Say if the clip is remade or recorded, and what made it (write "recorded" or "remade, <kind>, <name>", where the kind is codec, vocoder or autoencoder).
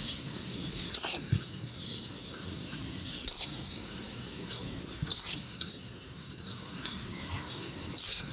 remade, codec, SNAC